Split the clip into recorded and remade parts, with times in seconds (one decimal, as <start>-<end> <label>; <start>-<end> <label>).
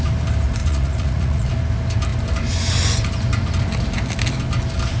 0.0-0.6 recorded; 0.6-1.5 remade; 1.5-5.0 recorded